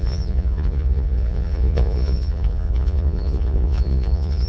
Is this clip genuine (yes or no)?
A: no